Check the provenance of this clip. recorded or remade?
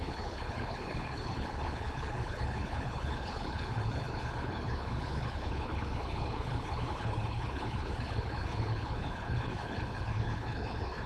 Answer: remade